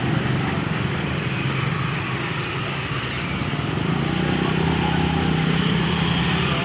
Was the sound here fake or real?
real